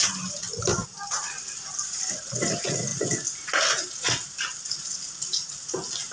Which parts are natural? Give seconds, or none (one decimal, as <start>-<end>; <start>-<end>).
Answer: 0.0-6.1